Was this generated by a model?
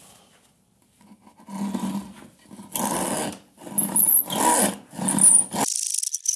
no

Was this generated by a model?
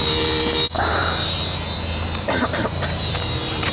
yes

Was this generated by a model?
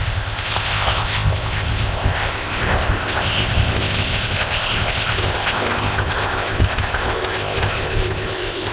yes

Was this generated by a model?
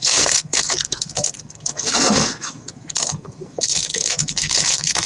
yes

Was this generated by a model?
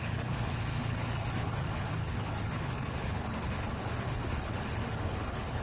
yes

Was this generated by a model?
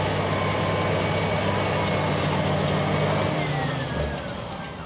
no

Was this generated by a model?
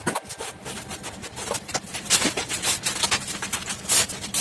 no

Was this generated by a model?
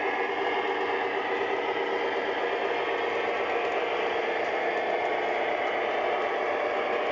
no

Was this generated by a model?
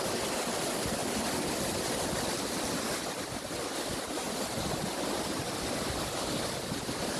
no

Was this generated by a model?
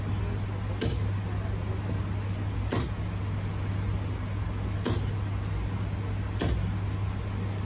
no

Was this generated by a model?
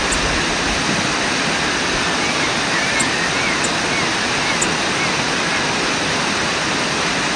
no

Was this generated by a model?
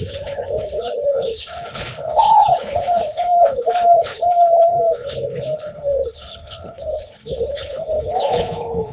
yes